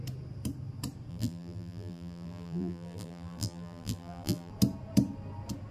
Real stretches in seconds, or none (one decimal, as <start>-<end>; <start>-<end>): 0.0-1.1; 4.5-5.7